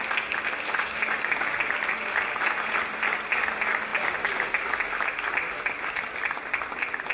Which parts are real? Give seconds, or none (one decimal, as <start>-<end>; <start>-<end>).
0.0-7.1